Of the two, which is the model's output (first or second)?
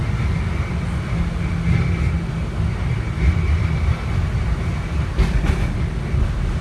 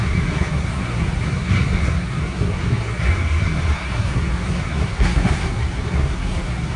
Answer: second